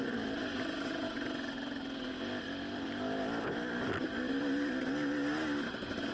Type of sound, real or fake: real